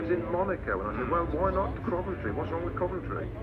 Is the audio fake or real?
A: real